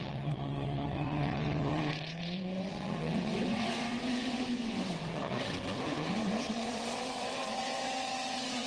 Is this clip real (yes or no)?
no